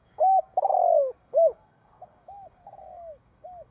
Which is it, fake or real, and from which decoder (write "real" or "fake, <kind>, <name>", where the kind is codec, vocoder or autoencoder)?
fake, codec, DAC